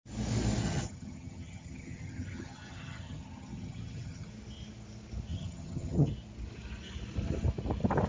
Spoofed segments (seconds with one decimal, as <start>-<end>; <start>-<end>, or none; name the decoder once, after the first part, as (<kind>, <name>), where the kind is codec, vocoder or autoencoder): 0.6-4.3 (vocoder, HiFi-GAN); 5.3-6.1